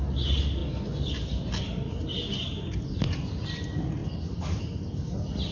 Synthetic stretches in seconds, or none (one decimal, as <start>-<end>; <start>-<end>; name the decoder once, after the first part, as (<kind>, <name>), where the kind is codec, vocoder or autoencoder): none